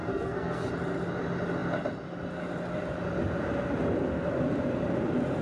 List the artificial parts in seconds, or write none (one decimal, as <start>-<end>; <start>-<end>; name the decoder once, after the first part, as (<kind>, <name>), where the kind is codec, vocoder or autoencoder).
0.0-0.7 (codec, SNAC)